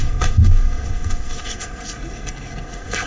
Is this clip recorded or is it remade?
remade